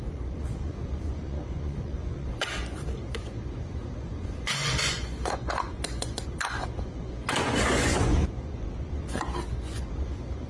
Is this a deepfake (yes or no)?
yes